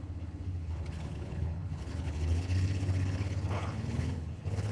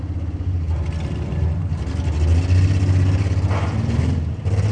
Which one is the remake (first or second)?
first